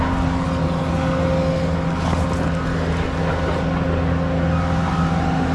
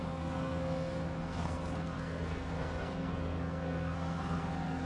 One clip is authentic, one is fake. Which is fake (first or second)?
second